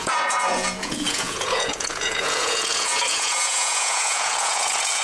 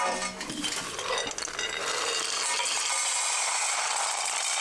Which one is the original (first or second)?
second